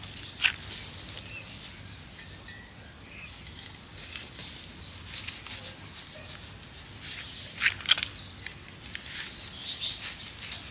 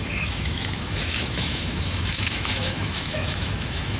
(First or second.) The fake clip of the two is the second